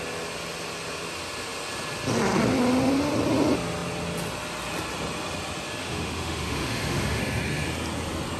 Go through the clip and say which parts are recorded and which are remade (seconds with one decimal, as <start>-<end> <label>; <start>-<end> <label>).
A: 0.0-5.8 recorded; 5.8-7.2 remade; 7.2-8.4 recorded